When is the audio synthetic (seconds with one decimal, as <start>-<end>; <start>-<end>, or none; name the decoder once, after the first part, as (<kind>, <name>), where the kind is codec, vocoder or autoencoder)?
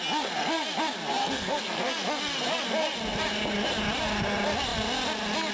1.2-1.9 (codec, SNAC)